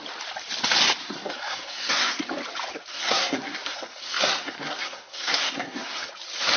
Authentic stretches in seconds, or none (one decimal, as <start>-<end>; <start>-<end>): 0.0-1.0; 2.2-2.9; 6.1-6.6